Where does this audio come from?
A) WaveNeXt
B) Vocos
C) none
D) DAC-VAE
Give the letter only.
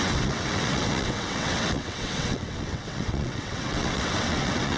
A